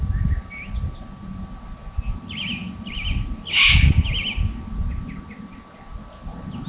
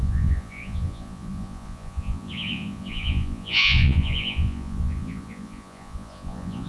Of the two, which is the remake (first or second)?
second